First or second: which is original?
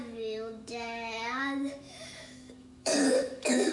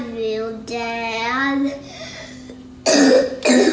second